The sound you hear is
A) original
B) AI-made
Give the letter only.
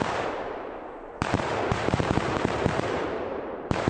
B